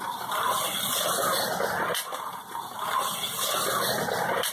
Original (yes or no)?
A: yes